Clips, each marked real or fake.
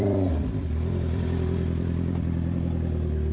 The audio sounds fake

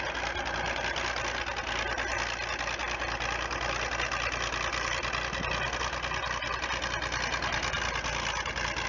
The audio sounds real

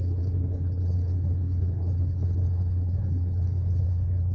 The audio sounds fake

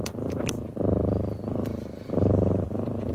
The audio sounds fake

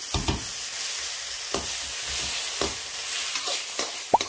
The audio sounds real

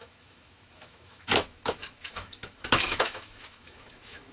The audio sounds fake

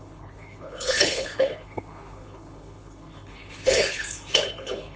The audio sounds fake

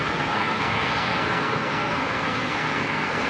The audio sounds fake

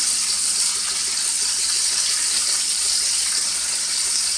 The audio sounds real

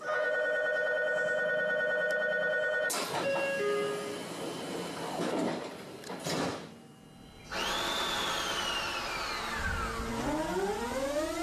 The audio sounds real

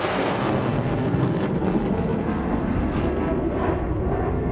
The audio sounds fake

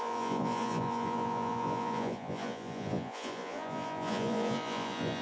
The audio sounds fake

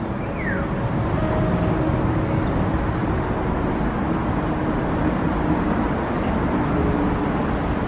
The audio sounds real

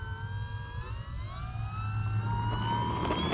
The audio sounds real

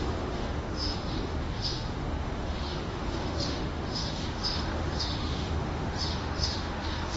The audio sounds fake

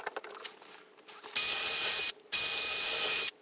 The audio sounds real